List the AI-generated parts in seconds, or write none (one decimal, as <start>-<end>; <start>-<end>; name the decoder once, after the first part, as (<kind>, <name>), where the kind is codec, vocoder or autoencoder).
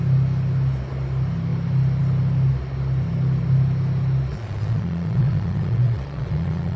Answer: 4.3-6.8 (vocoder, Vocos)